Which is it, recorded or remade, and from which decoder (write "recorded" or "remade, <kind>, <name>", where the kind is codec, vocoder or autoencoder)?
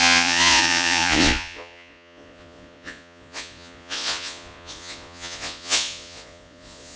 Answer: remade, vocoder, Vocos